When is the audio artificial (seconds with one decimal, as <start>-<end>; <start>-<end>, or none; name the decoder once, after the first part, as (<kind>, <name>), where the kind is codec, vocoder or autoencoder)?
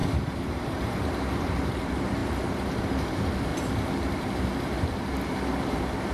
0.0-3.5 (vocoder, BigVGAN v2); 5.6-6.1